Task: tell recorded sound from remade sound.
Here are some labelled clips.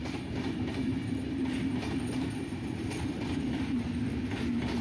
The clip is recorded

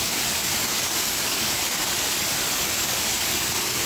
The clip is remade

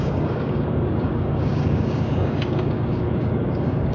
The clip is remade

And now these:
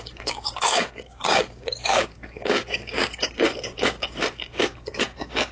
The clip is remade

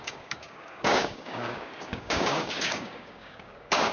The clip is remade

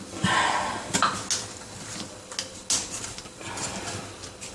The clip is recorded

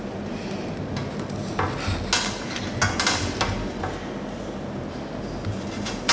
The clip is recorded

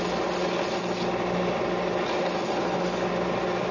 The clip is recorded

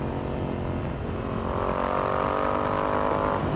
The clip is recorded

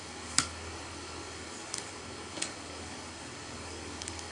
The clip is remade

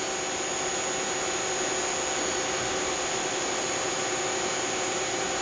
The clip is recorded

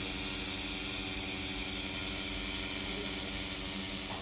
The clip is recorded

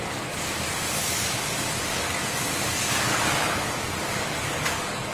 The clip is remade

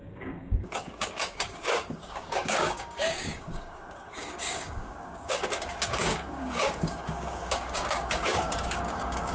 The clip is remade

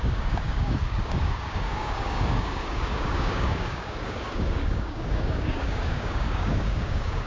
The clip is remade